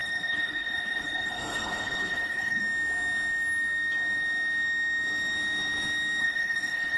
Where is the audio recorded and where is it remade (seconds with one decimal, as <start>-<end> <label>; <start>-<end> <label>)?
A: 0.0-2.6 remade; 2.6-6.2 recorded; 6.2-7.0 remade